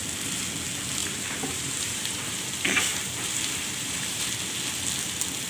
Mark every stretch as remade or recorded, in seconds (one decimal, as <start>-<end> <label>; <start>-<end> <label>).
0.0-1.0 recorded; 1.0-4.3 remade; 4.3-5.5 recorded

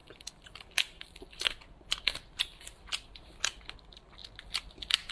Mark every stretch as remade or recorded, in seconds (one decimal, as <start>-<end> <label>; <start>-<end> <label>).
0.0-5.1 recorded